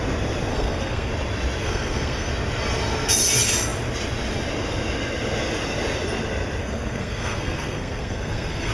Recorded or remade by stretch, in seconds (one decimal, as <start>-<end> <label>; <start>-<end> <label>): 0.0-0.5 recorded; 0.5-1.1 remade; 1.1-1.6 recorded; 1.6-2.3 remade; 2.3-6.6 recorded; 6.6-8.7 remade